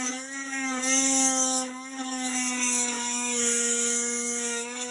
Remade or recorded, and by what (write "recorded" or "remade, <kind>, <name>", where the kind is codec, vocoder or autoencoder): remade, codec, DAC